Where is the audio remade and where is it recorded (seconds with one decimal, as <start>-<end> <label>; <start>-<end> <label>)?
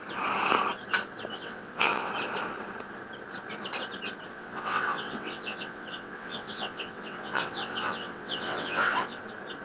0.0-1.3 recorded; 1.3-2.1 remade; 2.1-4.3 recorded; 4.3-9.2 remade; 9.2-9.6 recorded